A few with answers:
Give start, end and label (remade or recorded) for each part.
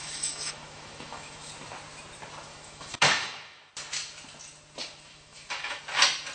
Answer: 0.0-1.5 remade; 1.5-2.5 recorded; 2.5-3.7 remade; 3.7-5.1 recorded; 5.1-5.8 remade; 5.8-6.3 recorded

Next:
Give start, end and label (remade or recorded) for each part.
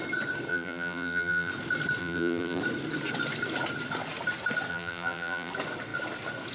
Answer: 0.0-0.5 recorded; 0.5-1.5 remade; 1.5-2.0 recorded; 2.0-2.6 remade; 2.6-4.7 recorded; 4.7-5.5 remade; 5.5-6.5 recorded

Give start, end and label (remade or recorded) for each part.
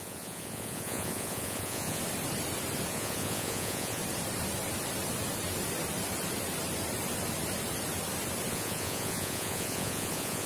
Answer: 0.0-2.0 remade; 2.0-2.9 recorded; 2.9-4.0 remade; 4.0-8.5 recorded; 8.5-10.5 remade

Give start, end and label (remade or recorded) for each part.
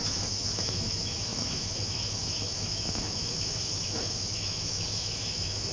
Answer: 0.0-5.7 remade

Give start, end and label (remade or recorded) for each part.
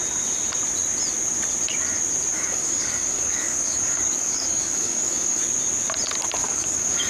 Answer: 0.0-2.3 recorded; 2.3-5.4 remade; 5.4-6.4 recorded; 6.4-7.1 remade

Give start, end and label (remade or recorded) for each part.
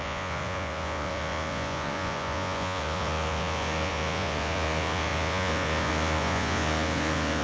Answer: 0.0-7.4 remade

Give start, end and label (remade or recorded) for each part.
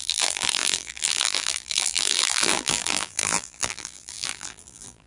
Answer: 0.0-5.1 remade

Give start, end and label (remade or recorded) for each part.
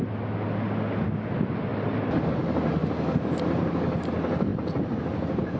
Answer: 0.0-5.6 recorded